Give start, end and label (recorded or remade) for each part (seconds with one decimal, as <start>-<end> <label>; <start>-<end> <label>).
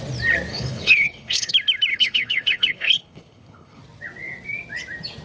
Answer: 0.0-0.5 recorded; 0.5-1.5 remade; 1.5-1.9 recorded; 1.9-3.8 remade; 3.8-5.2 recorded